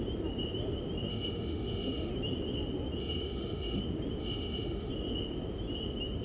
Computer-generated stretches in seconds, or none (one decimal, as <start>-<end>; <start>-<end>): 1.1-2.1; 3.0-3.8; 4.2-4.9